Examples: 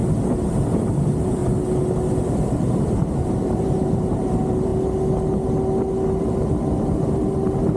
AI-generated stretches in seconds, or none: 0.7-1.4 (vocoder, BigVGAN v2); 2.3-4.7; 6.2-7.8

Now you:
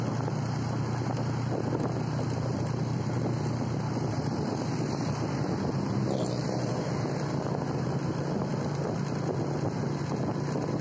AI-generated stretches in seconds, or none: none

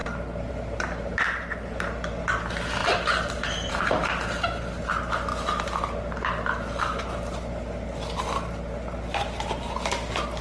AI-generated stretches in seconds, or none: 2.8-3.7 (vocoder, BigVGAN v2)

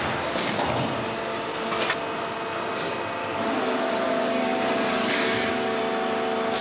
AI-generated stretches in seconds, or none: 3.2-5.8 (codec, DAC)

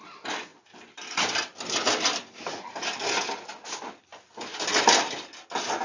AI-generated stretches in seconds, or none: none

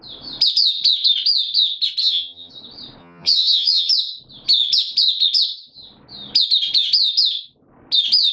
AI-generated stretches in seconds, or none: 2.0-2.5 (vocoder, HiFi-GAN); 3.0-3.9